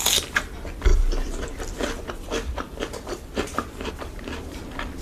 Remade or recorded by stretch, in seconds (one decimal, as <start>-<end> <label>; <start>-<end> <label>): 0.0-0.9 recorded; 0.9-3.9 remade; 3.9-5.0 recorded